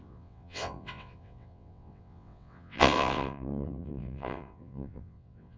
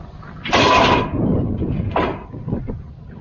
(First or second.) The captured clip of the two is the second